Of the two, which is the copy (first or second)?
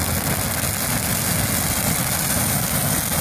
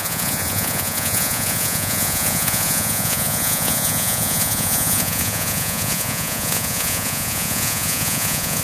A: second